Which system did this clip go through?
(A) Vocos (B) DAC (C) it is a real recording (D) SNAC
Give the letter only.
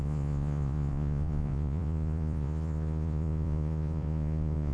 A